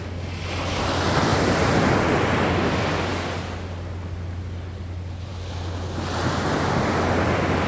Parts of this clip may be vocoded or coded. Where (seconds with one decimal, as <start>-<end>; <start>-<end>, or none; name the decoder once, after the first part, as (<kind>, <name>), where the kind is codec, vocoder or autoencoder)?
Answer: 1.3-1.9 (vocoder, BigVGAN v2)